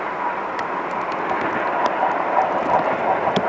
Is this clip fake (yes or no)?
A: no